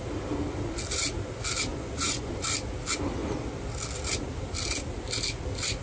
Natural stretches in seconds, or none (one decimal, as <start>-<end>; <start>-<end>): 0.0-1.7; 2.3-5.8